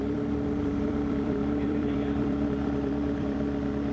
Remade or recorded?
remade